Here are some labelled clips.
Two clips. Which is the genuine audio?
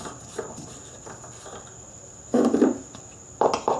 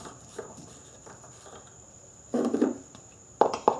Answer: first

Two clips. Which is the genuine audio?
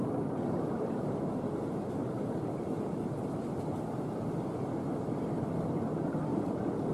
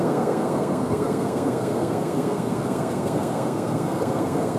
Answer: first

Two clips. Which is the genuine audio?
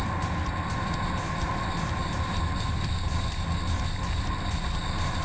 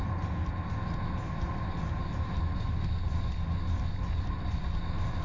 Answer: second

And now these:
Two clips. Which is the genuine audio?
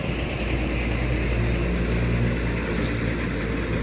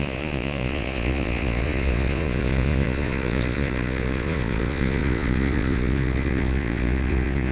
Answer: first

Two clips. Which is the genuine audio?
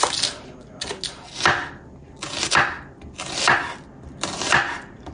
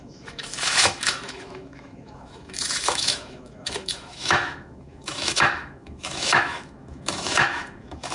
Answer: first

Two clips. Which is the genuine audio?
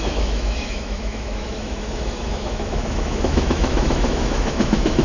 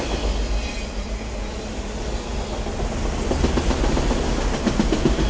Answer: second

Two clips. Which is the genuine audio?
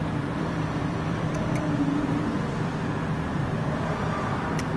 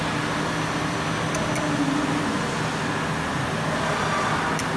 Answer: second